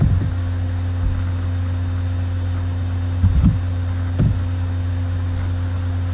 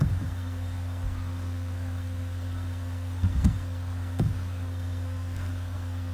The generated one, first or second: second